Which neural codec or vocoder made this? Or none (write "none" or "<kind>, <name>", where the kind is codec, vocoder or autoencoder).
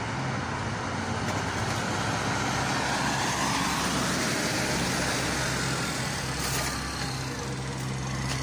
none